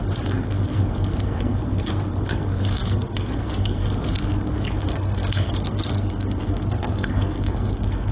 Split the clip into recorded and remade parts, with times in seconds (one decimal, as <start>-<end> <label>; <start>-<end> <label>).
0.0-8.1 remade